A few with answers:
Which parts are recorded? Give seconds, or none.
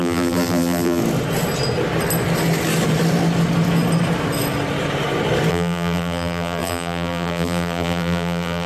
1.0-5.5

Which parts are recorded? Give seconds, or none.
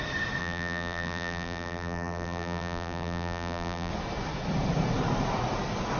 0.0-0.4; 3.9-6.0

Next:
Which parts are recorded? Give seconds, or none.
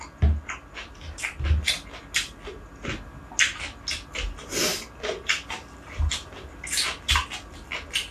0.0-8.1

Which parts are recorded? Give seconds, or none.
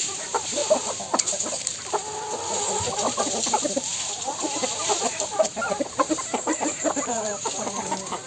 0.6-4.1; 5.3-6.1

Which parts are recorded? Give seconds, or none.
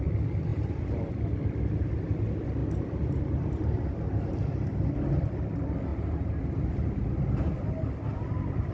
0.0-0.5; 1.1-2.6; 4.9-5.9; 6.4-8.7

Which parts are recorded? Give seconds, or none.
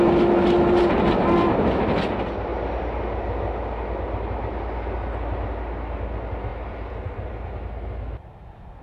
0.0-6.5; 7.3-8.8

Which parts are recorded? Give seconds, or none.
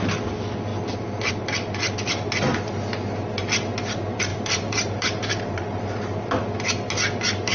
0.0-4.3; 5.8-7.5